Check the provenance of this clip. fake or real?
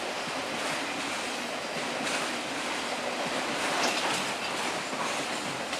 real